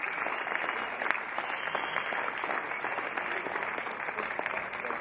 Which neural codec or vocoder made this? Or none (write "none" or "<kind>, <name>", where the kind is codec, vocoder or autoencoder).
none